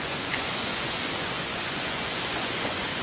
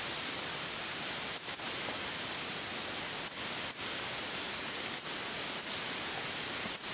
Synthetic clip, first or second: first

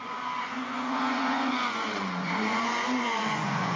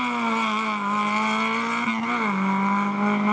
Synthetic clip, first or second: first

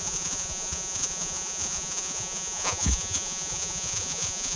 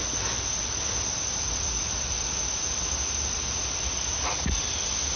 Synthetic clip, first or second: first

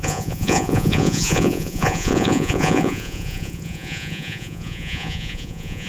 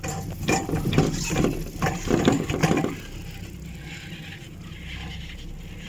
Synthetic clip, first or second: first